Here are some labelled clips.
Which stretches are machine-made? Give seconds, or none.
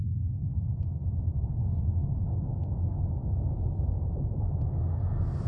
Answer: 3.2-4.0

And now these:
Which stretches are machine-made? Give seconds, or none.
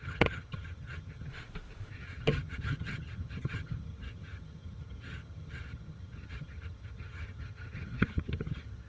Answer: 0.0-1.3; 1.9-8.9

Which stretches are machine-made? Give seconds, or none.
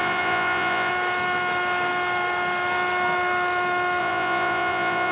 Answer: 0.0-0.9; 4.0-5.1